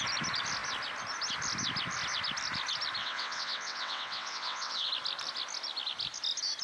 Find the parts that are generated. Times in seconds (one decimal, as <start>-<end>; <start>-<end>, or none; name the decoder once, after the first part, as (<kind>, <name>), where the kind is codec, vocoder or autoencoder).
3.0-4.9 (vocoder, WaveNeXt)